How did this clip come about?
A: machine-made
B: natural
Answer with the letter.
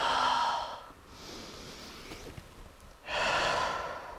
B